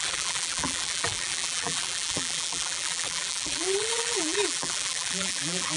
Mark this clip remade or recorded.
remade